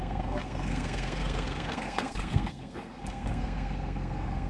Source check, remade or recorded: remade